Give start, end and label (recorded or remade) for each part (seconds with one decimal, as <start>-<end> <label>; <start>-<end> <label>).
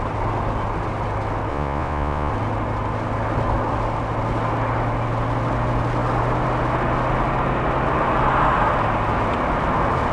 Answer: 0.0-1.5 recorded; 1.5-2.3 remade; 2.3-10.1 recorded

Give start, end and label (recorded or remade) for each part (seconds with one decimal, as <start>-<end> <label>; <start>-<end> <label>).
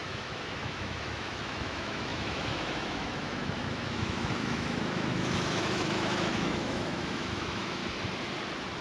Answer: 0.0-7.8 remade; 7.8-8.8 recorded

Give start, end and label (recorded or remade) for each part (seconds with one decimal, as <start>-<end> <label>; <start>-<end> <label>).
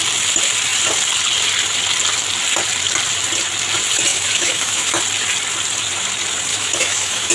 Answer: 0.0-4.1 recorded; 4.1-5.0 remade; 5.0-6.5 recorded; 6.5-7.3 remade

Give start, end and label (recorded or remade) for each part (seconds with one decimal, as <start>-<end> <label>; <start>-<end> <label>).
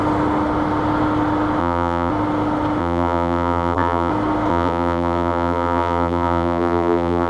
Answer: 0.0-1.6 recorded; 1.6-2.1 remade; 2.1-2.8 recorded; 2.8-4.1 remade; 4.1-4.5 recorded; 4.5-7.3 remade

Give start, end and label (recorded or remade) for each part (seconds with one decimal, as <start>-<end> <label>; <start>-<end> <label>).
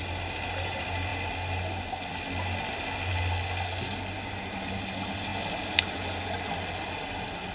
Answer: 0.0-7.5 recorded